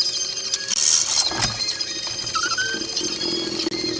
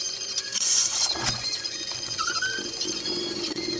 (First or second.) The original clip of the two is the first